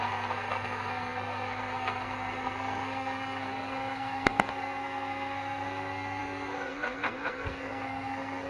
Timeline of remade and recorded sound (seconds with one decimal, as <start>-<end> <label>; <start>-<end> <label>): 0.0-8.5 remade